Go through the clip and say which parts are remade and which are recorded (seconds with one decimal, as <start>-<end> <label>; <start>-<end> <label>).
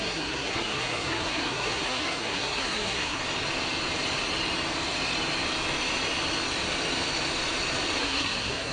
0.0-3.2 remade; 3.2-8.0 recorded; 8.0-8.7 remade